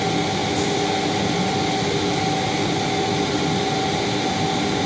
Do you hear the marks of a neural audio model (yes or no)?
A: no